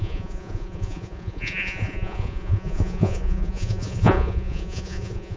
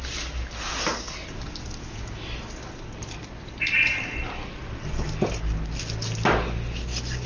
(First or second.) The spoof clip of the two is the first